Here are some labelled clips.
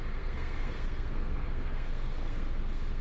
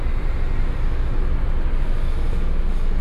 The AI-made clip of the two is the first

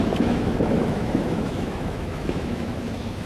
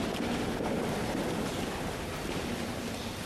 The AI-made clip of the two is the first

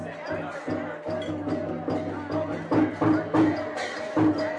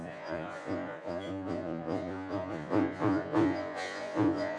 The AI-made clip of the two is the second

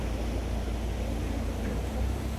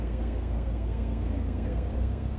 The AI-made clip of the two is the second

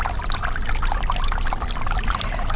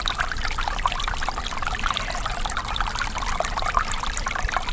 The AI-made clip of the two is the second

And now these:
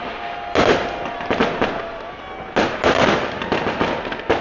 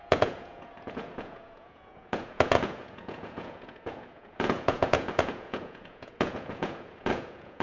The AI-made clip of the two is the second